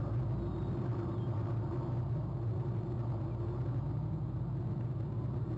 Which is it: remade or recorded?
recorded